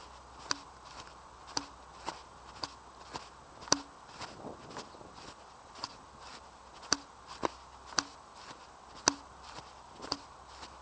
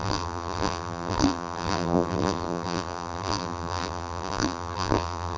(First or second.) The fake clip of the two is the second